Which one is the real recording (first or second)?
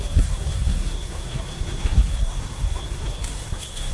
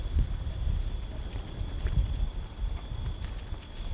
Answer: second